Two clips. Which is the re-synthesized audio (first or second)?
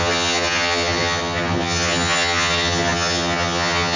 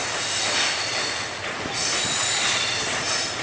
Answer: first